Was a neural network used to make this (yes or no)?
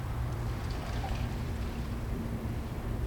yes